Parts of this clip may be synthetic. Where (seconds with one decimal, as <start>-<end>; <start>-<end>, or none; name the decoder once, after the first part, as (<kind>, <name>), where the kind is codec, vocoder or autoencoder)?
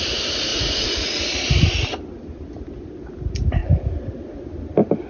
0.5-1.2 (vocoder, Vocos)